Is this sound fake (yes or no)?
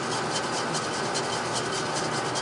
no